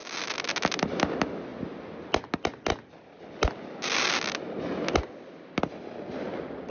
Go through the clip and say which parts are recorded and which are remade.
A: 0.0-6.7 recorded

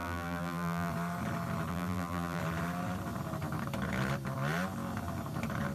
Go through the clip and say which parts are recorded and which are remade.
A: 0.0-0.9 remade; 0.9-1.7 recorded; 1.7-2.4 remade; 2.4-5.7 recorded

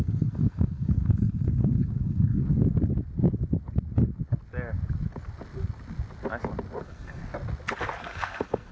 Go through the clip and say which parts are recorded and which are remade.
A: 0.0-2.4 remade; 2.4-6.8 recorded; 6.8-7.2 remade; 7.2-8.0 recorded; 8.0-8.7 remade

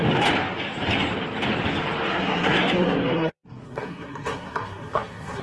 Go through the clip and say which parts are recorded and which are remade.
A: 0.0-2.1 recorded; 2.1-5.4 remade

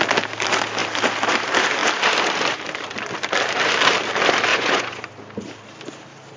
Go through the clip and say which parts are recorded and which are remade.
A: 0.0-4.5 recorded; 4.5-5.1 remade; 5.1-6.4 recorded

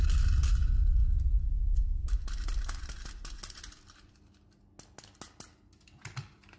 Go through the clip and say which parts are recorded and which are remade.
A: 0.0-6.6 recorded

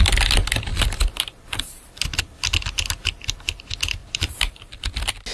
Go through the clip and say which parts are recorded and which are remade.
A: 0.0-0.7 recorded; 0.7-2.2 remade; 2.2-4.0 recorded; 4.0-4.6 remade; 4.6-5.3 recorded

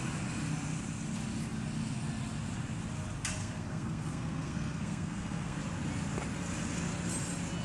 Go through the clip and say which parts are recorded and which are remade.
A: 0.0-3.4 recorded; 3.4-5.6 remade; 5.6-7.6 recorded